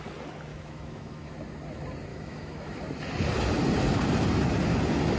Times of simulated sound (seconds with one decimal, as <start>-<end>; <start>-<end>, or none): 0.5-1.3; 2.1-2.7